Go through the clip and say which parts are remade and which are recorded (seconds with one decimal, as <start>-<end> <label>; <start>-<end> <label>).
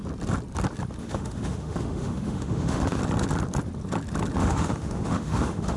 0.0-1.0 recorded; 1.0-3.0 remade; 3.0-4.4 recorded; 4.4-5.8 remade